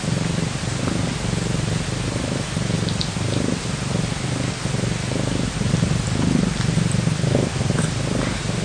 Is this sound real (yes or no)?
yes